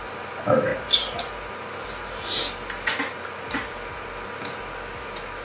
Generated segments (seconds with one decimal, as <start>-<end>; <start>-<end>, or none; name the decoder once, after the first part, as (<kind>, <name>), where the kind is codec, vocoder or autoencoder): none

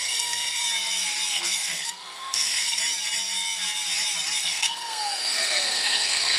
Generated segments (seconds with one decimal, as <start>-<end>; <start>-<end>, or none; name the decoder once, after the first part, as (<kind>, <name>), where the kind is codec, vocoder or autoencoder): 0.0-0.6 (codec, SNAC); 1.3-2.8; 4.4-6.4